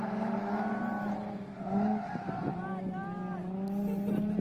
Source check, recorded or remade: recorded